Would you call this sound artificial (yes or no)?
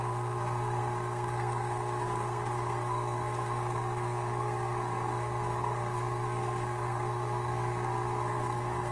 yes